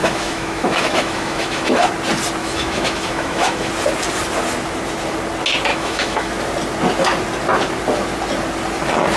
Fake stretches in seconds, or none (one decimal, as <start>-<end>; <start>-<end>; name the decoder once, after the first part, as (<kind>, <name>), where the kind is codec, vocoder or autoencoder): 0.0-1.9 (autoencoder, DAC-VAE); 2.4-3.7; 5.7-6.3